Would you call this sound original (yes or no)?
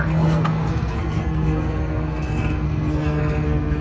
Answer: no